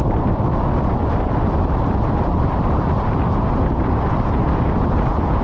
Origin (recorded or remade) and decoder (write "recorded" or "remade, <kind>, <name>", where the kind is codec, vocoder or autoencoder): recorded